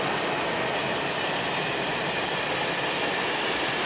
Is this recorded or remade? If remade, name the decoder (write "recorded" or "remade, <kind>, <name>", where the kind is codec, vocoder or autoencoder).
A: recorded